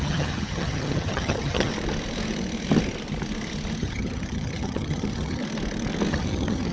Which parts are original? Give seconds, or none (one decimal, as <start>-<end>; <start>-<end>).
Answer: 1.7-3.8; 5.4-6.1